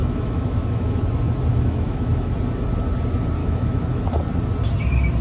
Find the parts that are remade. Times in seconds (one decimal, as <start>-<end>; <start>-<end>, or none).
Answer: 0.0-1.0; 1.5-2.3; 3.4-4.1